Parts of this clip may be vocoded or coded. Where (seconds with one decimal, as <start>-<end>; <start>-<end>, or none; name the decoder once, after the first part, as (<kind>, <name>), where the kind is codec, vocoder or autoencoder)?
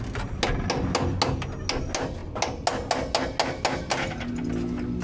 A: none